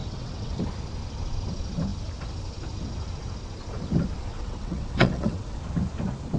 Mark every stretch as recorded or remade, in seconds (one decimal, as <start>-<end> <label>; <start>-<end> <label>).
0.0-0.6 remade; 0.6-4.3 recorded; 4.3-5.6 remade; 5.6-6.4 recorded